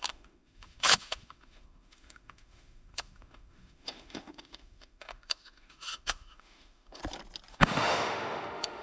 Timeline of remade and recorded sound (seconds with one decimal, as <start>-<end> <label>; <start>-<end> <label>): 0.0-7.0 remade; 7.0-7.5 recorded; 7.5-8.8 remade